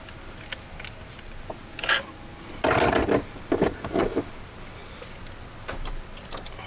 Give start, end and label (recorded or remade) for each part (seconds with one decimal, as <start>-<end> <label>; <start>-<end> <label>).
0.0-6.7 recorded